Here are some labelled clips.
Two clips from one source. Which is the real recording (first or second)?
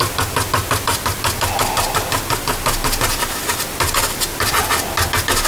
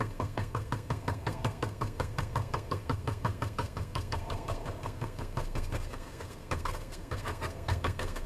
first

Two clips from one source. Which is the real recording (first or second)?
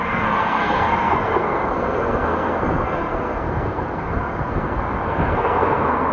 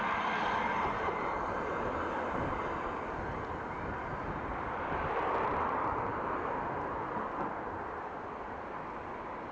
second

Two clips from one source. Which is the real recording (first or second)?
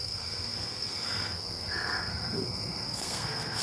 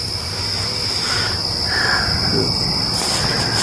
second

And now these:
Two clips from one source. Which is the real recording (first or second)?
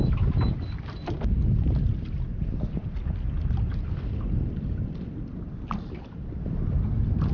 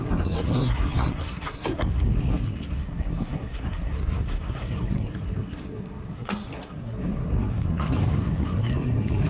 first